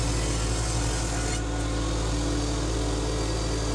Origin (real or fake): real